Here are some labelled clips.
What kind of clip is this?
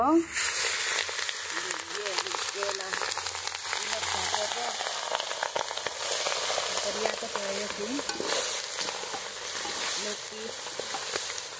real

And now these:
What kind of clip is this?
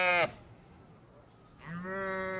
real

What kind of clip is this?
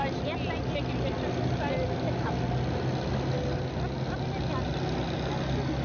real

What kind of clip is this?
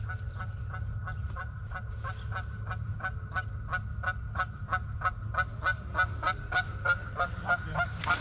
real